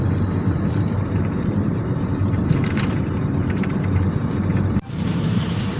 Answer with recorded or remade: remade